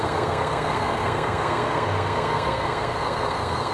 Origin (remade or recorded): remade